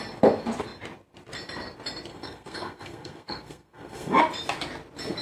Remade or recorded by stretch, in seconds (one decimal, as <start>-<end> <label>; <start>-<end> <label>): 0.0-2.1 recorded; 2.1-4.2 remade; 4.2-5.2 recorded

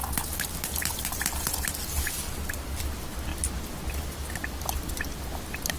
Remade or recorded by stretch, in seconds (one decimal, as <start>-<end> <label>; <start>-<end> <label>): 0.0-5.8 recorded